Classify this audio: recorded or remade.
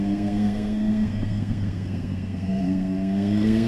remade